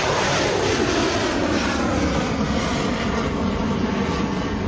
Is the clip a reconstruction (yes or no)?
no